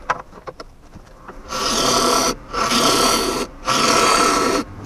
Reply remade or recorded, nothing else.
remade